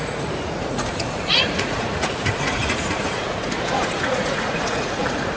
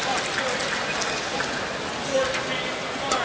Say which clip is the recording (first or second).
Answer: second